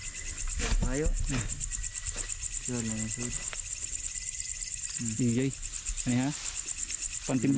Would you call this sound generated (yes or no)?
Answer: no